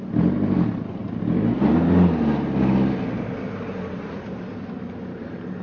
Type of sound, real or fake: real